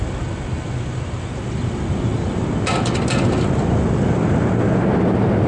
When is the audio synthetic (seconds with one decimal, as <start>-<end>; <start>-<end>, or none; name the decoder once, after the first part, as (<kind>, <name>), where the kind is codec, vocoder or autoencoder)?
none